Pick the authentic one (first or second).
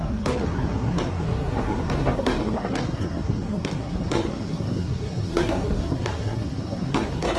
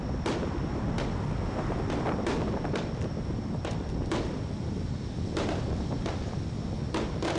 second